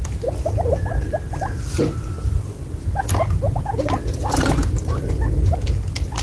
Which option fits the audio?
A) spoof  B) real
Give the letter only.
B